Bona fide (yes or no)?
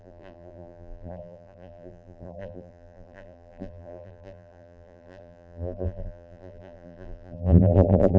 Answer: no